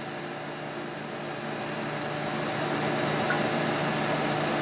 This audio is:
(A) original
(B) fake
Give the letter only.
A